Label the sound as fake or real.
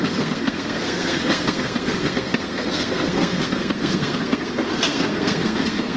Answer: fake